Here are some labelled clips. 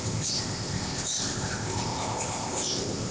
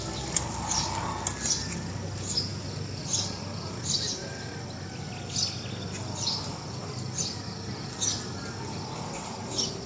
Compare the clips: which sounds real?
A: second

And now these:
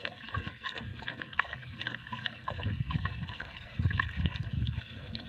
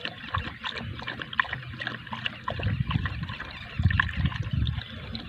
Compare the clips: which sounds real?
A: second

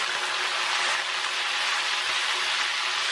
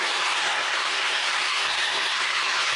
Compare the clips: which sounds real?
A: first